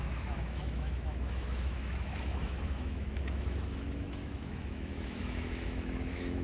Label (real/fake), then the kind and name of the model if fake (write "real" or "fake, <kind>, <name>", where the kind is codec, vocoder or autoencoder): fake, autoencoder, DAC-VAE